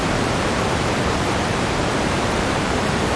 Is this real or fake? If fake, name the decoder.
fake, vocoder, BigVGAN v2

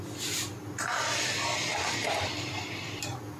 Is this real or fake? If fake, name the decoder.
real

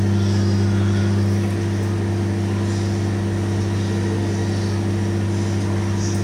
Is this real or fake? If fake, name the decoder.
real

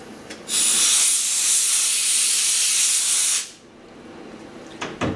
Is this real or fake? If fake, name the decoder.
real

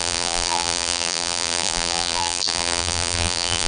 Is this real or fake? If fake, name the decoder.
fake, vocoder, BigVGAN v2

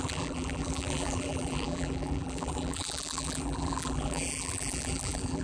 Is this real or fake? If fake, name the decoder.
fake, vocoder, BigVGAN v2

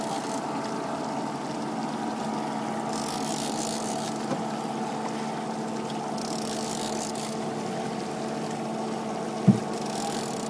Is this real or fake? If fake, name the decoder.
real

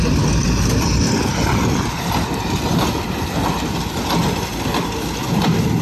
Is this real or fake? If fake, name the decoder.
real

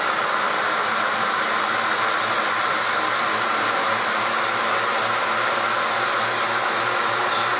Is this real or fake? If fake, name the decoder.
real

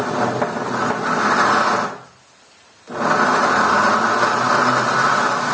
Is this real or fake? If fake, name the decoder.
real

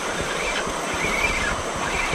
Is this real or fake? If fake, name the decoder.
fake, vocoder, BigVGAN v2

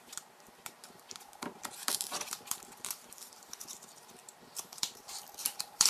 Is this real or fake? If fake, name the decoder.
fake, vocoder, BigVGAN v2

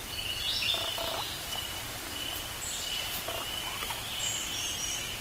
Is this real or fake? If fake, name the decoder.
fake, vocoder, BigVGAN v2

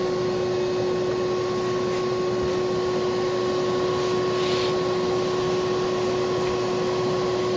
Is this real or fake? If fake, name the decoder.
real